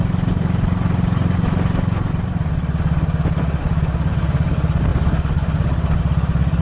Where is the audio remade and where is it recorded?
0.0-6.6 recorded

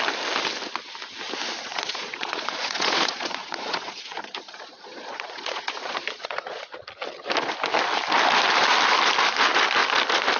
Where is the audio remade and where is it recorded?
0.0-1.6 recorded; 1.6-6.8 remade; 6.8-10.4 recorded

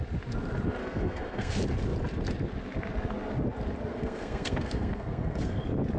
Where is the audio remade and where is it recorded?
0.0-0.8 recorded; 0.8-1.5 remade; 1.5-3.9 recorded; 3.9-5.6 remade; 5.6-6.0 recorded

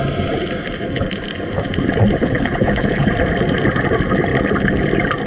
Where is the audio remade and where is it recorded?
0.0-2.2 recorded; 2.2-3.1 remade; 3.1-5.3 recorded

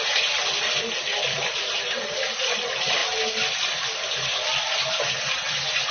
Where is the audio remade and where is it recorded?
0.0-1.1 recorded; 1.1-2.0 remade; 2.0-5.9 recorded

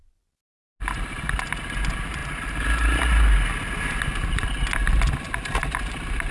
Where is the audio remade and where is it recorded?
0.0-6.3 recorded

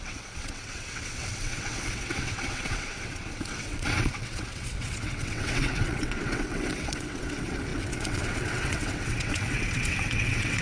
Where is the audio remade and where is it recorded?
0.0-10.6 remade